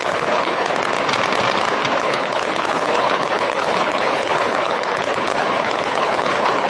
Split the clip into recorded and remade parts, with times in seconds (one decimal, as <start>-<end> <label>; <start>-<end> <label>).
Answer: 0.0-0.7 remade; 0.7-2.0 recorded; 2.0-6.7 remade